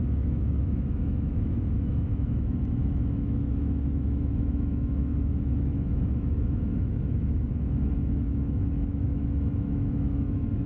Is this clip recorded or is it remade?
remade